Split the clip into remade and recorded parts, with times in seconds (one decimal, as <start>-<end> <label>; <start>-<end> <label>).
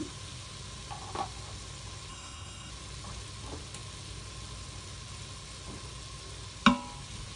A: 0.0-2.1 recorded; 2.1-2.7 remade; 2.7-7.4 recorded